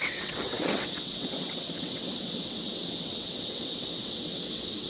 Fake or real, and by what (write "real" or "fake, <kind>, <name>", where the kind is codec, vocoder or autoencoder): fake, vocoder, WaveNeXt